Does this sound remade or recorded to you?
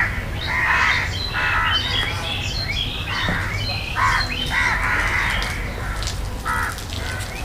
recorded